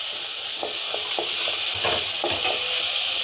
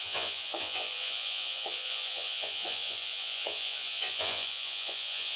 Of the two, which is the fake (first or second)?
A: second